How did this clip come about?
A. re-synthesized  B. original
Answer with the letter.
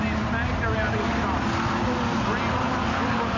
B